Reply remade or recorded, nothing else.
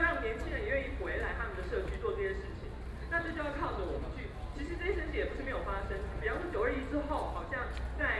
recorded